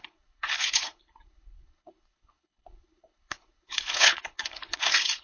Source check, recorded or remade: remade